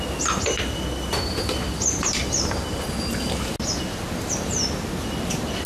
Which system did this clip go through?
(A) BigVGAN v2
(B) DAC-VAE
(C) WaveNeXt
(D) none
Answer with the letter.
D